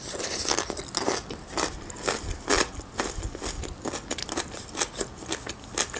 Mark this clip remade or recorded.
recorded